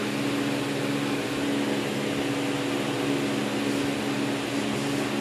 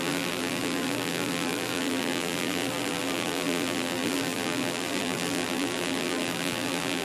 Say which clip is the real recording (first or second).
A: first